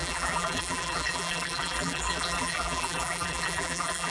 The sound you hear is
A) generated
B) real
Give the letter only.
A